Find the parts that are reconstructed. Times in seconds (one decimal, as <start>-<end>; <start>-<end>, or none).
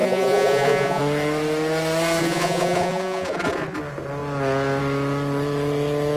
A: 0.0-1.0; 2.2-3.8